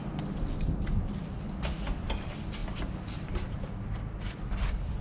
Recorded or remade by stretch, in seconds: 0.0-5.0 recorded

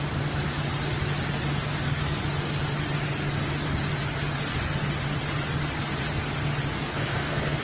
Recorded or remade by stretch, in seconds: 0.0-6.8 recorded; 6.8-7.6 remade